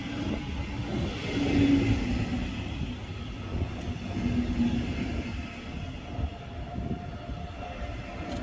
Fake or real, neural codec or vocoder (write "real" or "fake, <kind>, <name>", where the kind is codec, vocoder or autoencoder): real